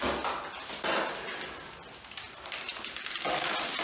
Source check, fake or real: real